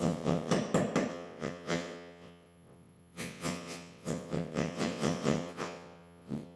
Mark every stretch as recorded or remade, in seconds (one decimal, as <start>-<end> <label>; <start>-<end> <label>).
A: 0.0-0.5 remade; 0.5-1.1 recorded; 1.1-6.6 remade